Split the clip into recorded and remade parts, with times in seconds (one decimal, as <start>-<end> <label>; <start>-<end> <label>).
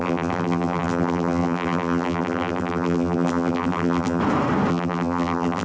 0.0-4.2 remade; 4.2-4.7 recorded; 4.7-5.6 remade